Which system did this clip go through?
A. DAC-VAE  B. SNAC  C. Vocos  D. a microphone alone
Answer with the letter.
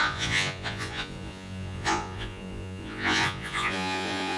C